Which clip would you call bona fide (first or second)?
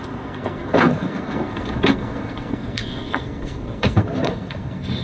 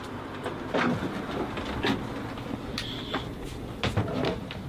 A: second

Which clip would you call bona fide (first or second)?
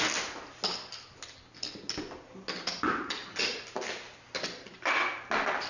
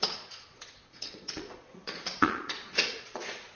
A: first